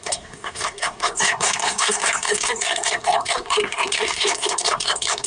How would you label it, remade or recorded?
remade